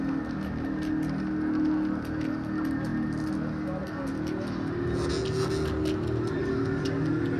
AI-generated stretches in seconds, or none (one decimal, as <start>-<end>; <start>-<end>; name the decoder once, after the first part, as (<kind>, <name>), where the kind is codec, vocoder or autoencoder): none